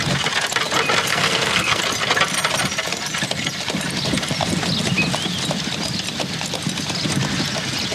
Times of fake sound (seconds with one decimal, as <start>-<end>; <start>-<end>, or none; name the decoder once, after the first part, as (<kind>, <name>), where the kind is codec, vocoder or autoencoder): 1.1-1.8 (codec, SNAC)